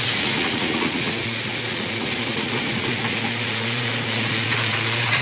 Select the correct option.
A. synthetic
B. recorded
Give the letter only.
A